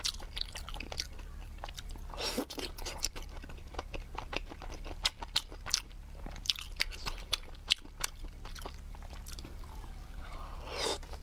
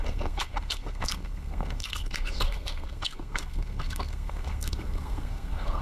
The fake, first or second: second